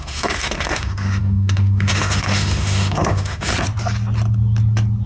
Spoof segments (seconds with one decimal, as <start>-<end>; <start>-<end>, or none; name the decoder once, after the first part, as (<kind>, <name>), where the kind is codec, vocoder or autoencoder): 0.0-3.5 (autoencoder, DAC-VAE)

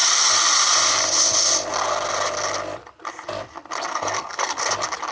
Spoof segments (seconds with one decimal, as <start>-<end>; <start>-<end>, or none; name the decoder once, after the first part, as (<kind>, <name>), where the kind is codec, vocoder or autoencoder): 3.9-4.6 (codec, SNAC)

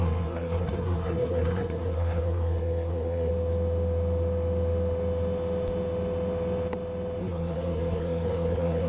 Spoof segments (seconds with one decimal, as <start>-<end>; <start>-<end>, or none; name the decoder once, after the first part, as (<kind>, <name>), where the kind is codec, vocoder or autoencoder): 0.0-3.3 (codec, SNAC); 7.2-8.9